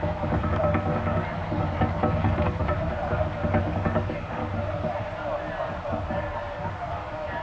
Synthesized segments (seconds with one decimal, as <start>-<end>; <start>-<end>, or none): 0.0-2.6; 3.6-4.4; 6.1-7.4